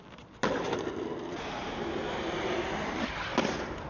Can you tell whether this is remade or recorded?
recorded